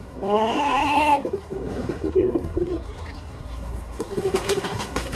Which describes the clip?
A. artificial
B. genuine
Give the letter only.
A